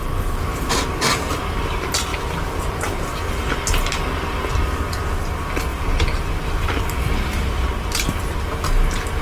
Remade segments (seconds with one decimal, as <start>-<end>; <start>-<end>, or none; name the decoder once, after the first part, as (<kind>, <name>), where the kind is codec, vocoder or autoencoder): 2.1-3.4 (vocoder, BigVGAN v2); 5.7-8.5